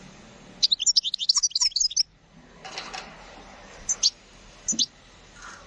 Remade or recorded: recorded